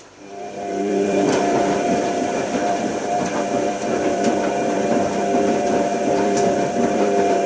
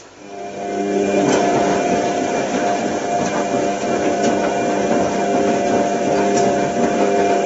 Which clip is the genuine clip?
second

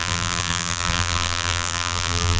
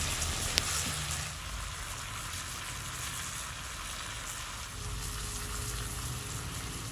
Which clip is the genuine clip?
second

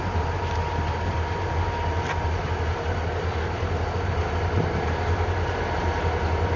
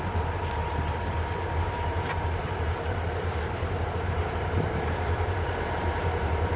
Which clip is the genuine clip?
first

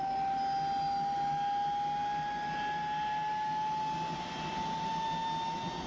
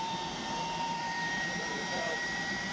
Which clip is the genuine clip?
first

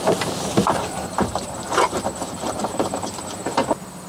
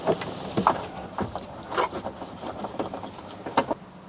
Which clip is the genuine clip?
second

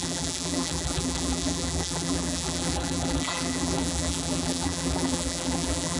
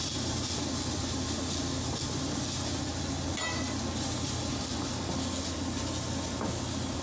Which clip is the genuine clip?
second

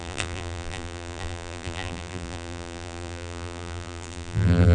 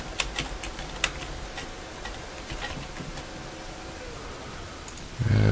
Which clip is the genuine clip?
second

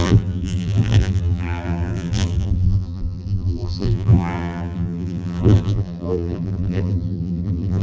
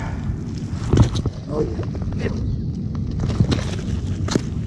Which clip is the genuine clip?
second